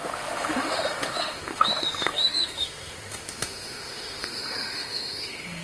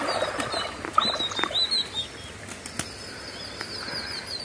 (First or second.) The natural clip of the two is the second